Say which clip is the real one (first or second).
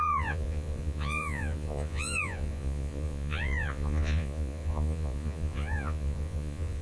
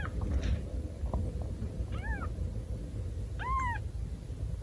second